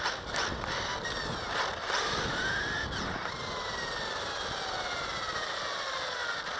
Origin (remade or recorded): recorded